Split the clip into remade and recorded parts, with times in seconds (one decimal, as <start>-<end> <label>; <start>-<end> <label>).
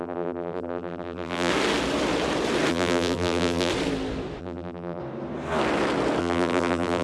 0.0-1.5 remade; 1.5-2.7 recorded; 2.7-3.7 remade; 3.7-4.4 recorded; 4.4-5.0 remade; 5.0-6.2 recorded; 6.2-7.0 remade